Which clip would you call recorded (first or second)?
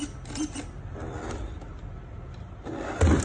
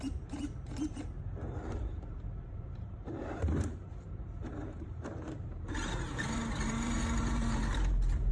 first